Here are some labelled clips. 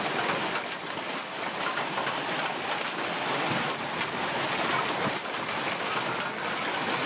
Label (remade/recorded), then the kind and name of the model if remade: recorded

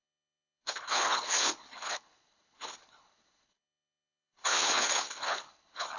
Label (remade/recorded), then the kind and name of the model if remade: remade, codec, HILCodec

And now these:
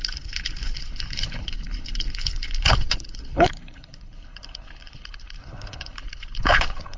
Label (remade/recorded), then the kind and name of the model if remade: remade, codec, HILCodec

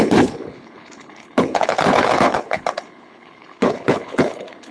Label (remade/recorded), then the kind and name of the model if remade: remade, codec, HILCodec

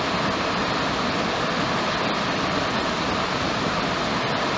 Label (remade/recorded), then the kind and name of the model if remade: recorded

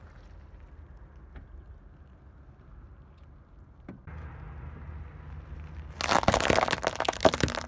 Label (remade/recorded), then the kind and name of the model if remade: recorded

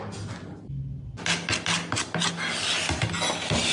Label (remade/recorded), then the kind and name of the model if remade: recorded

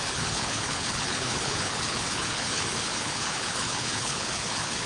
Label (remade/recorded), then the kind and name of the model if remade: remade, codec, HILCodec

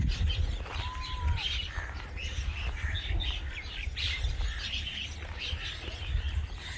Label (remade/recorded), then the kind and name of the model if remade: recorded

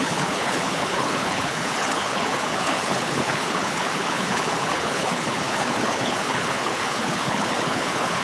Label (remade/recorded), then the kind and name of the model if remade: remade, codec, HILCodec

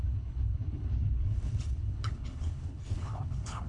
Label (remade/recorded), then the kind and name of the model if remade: remade, codec, HILCodec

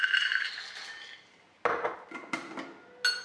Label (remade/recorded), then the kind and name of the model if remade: recorded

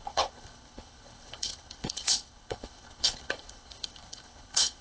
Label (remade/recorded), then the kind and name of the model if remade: remade, codec, HILCodec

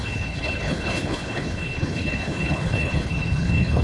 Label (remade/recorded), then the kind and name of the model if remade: remade, codec, HILCodec